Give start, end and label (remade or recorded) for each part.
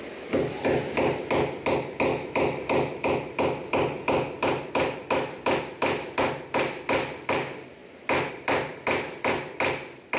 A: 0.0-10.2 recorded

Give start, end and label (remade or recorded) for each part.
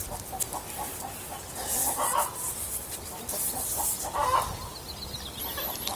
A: 0.0-6.0 recorded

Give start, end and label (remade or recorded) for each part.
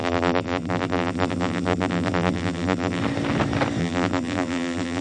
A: 0.0-3.0 remade; 3.0-3.8 recorded; 3.8-5.0 remade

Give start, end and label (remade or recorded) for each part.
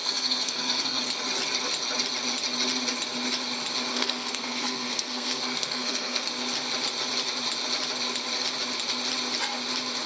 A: 0.0-1.0 remade; 1.0-3.9 recorded; 3.9-6.3 remade; 6.3-10.1 recorded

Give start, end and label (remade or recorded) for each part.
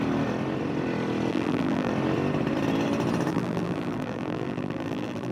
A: 0.0-1.3 recorded; 1.3-1.9 remade; 1.9-3.3 recorded; 3.3-5.3 remade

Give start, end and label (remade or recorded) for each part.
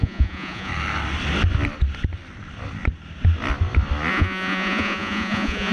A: 0.0-0.7 remade; 0.7-4.1 recorded; 4.1-5.7 remade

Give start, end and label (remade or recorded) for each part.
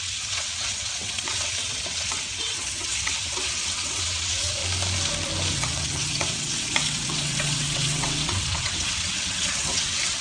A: 0.0-4.6 remade; 4.6-5.5 recorded; 5.5-10.2 remade